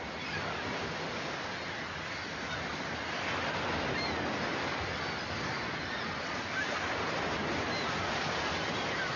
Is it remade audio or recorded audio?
recorded